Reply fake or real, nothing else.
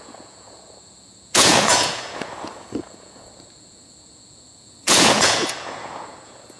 fake